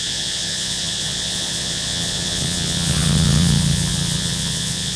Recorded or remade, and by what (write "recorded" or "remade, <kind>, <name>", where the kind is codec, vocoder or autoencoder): remade, vocoder, Vocos